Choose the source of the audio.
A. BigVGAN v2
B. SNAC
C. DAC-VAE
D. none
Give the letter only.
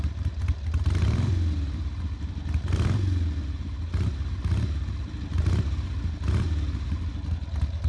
D